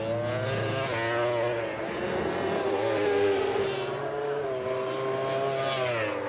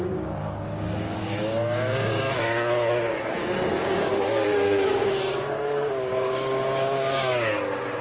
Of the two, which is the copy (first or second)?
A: second